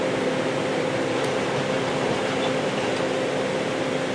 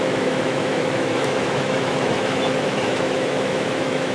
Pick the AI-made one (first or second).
second